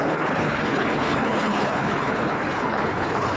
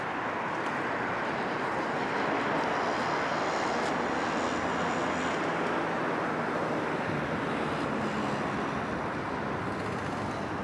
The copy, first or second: first